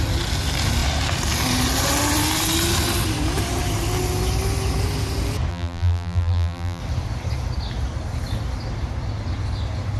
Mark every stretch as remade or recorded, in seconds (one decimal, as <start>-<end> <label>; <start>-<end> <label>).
0.0-5.5 recorded; 5.5-6.8 remade; 6.8-10.0 recorded